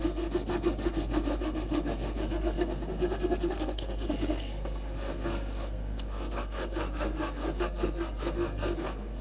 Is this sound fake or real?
fake